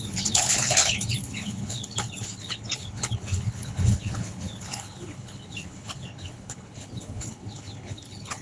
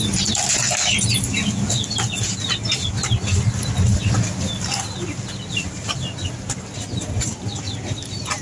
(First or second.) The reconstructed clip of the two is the first